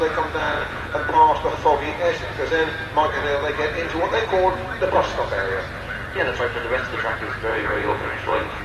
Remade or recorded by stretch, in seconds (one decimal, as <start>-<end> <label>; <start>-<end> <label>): 0.0-0.4 recorded; 0.4-0.9 remade; 0.9-7.5 recorded; 7.5-8.6 remade